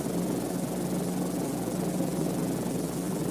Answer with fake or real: real